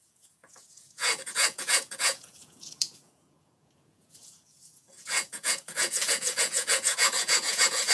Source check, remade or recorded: remade